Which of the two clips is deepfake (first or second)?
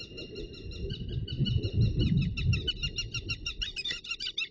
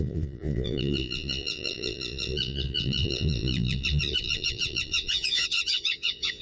second